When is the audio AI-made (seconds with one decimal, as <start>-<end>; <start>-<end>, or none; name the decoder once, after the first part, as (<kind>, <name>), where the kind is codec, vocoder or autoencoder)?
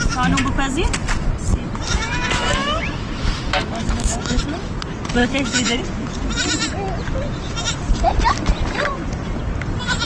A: 2.6-4.4 (autoencoder, DAC-VAE); 5.2-5.8